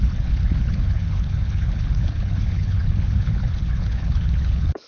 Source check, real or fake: fake